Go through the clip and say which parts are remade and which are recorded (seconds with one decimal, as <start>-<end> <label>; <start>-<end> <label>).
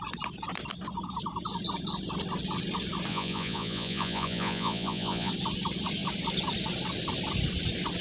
0.0-3.1 recorded; 3.1-5.3 remade; 5.3-8.0 recorded